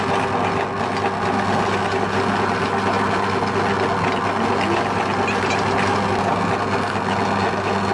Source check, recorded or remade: recorded